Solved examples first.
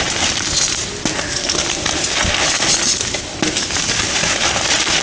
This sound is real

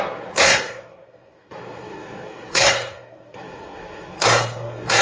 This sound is fake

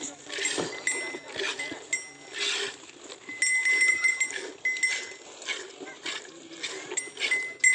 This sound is real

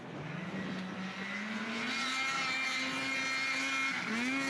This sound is real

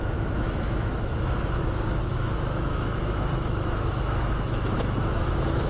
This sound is fake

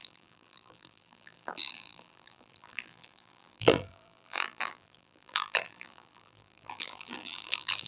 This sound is fake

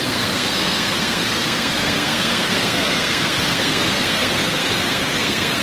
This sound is fake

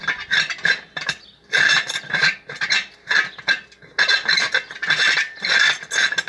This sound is real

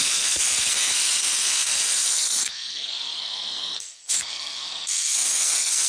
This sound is fake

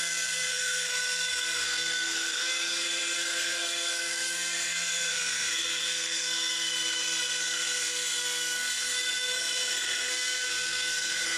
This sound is fake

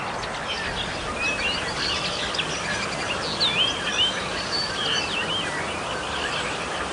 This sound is real